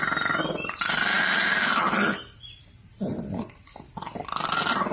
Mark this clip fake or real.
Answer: real